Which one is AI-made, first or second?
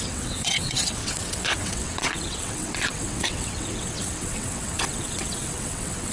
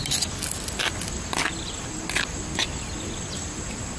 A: first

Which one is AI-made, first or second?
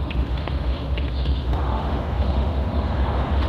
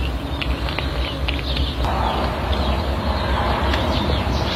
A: first